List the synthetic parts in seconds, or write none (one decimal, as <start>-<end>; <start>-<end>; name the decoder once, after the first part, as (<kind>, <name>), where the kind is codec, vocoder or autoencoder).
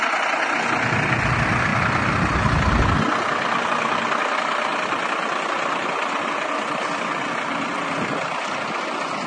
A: 1.7-2.4 (vocoder, BigVGAN v2)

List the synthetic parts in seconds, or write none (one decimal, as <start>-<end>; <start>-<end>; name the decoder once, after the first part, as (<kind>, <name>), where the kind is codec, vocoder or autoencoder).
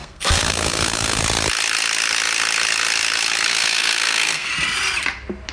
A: 0.0-1.2 (codec, SNAC); 3.5-4.5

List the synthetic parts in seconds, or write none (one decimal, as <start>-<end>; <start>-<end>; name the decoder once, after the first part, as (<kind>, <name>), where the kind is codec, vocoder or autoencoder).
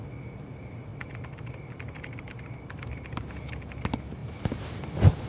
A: 0.9-3.3 (vocoder, BigVGAN v2); 4.2-4.8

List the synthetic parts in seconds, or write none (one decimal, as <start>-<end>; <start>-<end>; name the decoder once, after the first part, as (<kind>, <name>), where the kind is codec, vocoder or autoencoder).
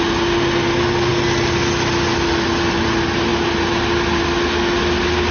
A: none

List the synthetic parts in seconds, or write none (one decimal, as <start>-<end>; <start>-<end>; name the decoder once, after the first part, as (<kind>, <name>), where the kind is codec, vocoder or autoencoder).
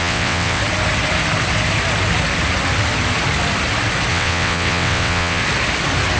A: 0.0-0.6 (vocoder, WaveNeXt); 4.1-5.4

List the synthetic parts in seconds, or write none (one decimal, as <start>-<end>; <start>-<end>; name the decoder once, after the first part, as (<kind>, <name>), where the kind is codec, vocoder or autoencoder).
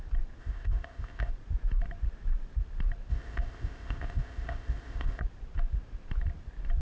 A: 0.4-1.3 (codec, ZipCodec); 3.1-5.2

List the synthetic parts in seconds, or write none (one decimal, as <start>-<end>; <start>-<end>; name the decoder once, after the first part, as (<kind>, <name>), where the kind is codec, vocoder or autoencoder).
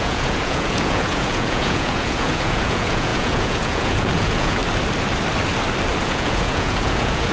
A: 0.0-4.6 (vocoder, Vocos); 6.0-7.3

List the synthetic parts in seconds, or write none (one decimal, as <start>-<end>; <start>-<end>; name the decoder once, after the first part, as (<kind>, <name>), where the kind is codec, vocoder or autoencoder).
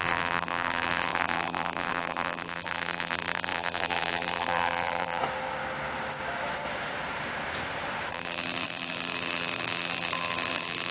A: 0.0-5.2 (vocoder, BigVGAN v2); 8.1-10.9